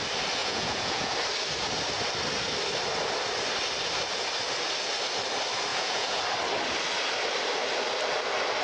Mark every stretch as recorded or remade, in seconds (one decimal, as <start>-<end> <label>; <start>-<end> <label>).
0.0-0.4 recorded; 0.4-1.1 remade; 1.1-5.7 recorded; 5.7-6.2 remade; 6.2-8.6 recorded